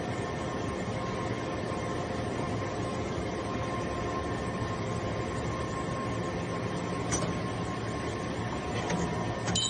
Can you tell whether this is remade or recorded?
recorded